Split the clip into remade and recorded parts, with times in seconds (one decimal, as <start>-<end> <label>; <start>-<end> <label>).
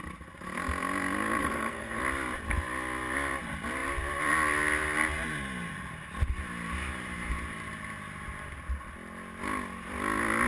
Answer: 0.0-1.4 recorded; 1.4-2.0 remade; 2.0-10.5 recorded